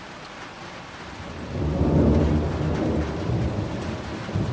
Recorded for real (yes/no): yes